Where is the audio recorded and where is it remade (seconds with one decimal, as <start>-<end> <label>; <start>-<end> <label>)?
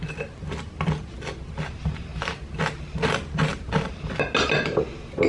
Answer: 0.0-5.3 recorded